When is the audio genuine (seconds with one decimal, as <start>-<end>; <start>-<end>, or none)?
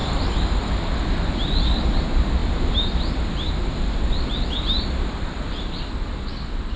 0.0-6.8